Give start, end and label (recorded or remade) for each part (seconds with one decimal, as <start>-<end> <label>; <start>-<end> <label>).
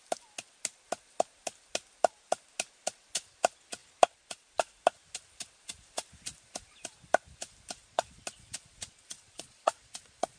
0.0-7.8 recorded; 7.8-10.4 remade